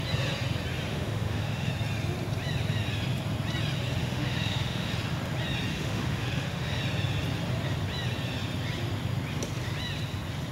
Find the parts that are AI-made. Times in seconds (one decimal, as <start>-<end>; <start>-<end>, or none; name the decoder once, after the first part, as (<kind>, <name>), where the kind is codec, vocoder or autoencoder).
0.9-1.7 (autoencoder, DAC-VAE); 4.0-4.9; 5.7-6.8